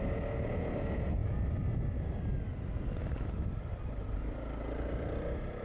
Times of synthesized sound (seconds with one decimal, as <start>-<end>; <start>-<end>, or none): none

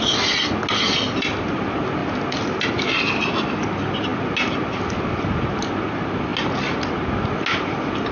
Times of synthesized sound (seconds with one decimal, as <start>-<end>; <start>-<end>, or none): none

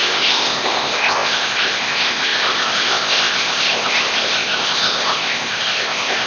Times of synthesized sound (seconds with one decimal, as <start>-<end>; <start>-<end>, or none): 0.0-6.3